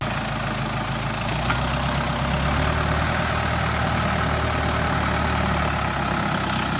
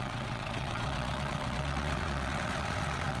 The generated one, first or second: second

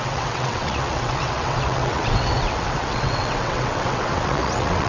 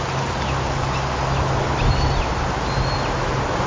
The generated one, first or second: first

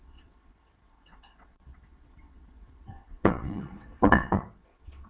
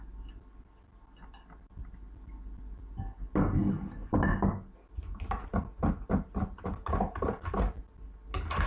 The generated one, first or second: first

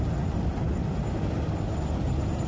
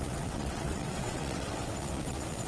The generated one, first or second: second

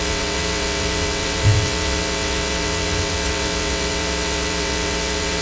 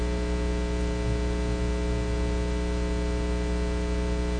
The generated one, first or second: first